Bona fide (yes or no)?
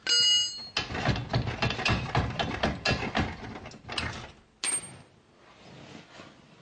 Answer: yes